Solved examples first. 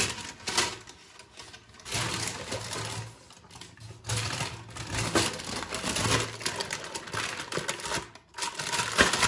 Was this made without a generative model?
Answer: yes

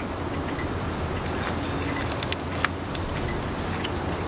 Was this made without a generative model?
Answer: yes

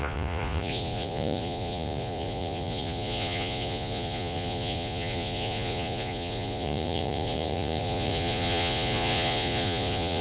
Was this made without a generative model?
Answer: no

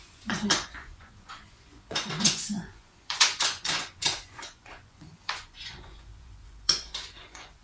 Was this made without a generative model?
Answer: no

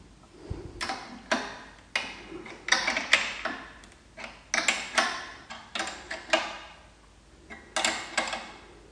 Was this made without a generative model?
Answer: yes